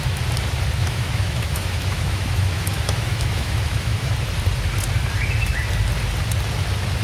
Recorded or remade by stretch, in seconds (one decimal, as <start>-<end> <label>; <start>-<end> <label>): 0.0-0.8 recorded; 0.8-4.1 remade; 4.1-7.0 recorded